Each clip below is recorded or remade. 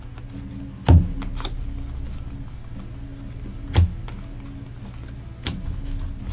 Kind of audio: recorded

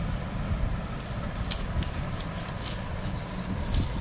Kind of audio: recorded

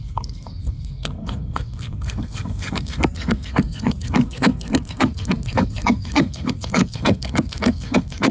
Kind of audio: remade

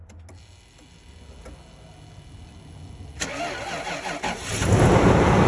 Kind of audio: recorded